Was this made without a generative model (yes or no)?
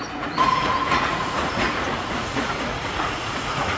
no